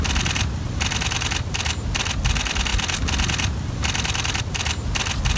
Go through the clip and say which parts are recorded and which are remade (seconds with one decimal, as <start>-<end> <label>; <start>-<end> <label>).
0.0-5.4 recorded